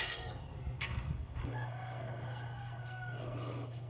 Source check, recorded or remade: remade